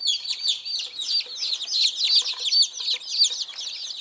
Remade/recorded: recorded